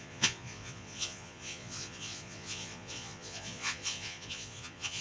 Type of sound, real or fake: fake